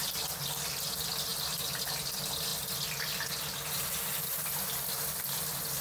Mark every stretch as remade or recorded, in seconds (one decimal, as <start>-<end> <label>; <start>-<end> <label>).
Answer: 0.0-5.8 recorded